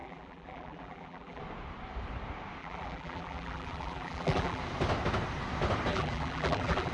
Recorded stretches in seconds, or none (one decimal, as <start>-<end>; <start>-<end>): 1.4-2.6; 4.6-5.9